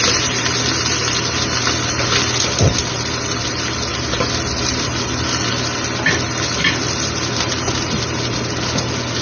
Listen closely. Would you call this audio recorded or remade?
recorded